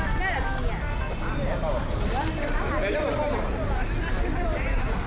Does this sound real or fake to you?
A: real